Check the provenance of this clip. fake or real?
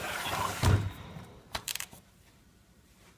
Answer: fake